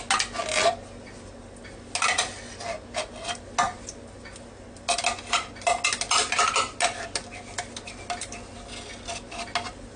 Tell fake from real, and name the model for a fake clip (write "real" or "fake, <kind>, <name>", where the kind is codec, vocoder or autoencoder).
real